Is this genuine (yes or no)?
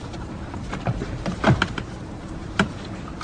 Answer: no